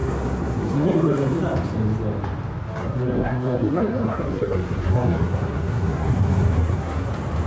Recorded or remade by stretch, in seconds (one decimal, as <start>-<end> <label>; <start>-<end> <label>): 0.0-1.4 remade; 1.4-2.8 recorded; 2.8-7.1 remade; 7.1-7.5 recorded